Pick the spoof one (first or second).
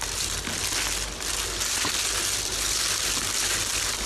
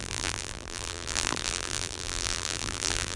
second